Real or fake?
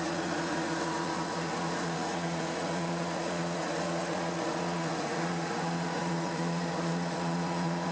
fake